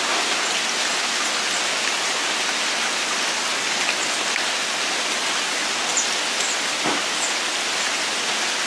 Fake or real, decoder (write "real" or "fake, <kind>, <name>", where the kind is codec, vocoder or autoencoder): real